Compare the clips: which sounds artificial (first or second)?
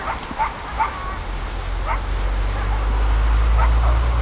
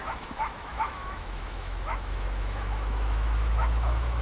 second